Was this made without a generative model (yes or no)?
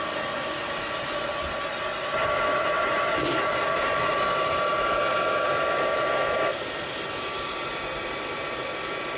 yes